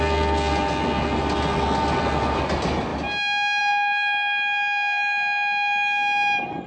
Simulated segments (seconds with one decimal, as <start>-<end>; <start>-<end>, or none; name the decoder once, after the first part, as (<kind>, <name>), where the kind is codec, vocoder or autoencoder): none